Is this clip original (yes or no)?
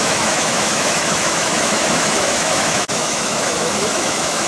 no